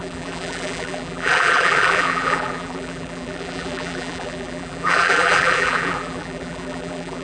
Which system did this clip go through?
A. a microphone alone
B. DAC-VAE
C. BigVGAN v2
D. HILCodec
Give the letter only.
C